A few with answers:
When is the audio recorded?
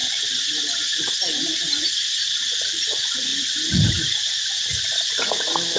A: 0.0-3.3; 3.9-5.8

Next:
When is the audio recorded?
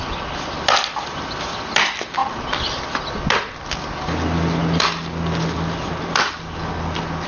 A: 0.0-7.3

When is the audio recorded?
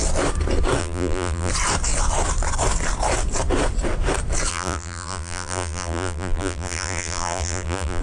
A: 0.0-0.8; 1.5-4.5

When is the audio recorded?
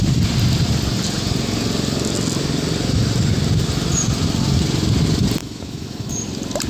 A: 0.0-5.4; 6.1-6.7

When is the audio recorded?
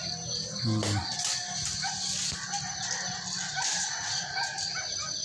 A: 0.0-5.2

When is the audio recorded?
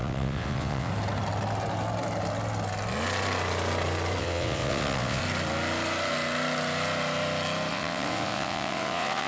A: 0.9-4.2; 5.2-7.7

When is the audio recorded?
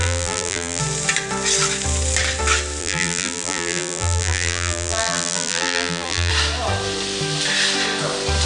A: 0.8-2.8; 6.3-8.4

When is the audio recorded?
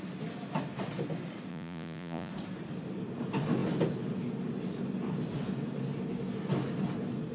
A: 0.0-1.5; 2.3-7.3